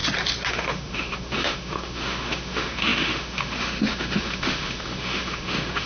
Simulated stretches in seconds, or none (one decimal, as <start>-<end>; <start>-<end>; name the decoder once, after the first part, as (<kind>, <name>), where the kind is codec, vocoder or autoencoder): 0.5-5.9 (autoencoder, DAC-VAE)